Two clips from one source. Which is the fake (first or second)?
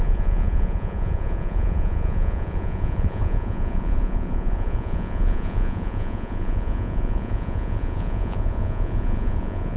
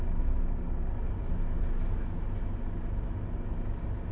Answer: first